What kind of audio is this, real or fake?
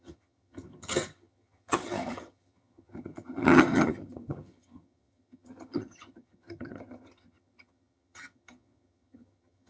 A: fake